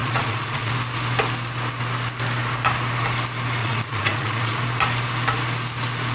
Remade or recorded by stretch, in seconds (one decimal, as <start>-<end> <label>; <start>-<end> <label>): 0.0-0.7 remade; 0.7-3.6 recorded; 3.6-4.6 remade; 4.6-6.1 recorded